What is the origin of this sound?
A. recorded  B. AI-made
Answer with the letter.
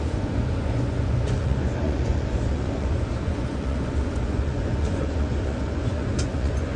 B